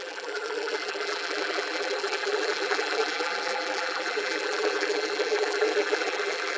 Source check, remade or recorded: remade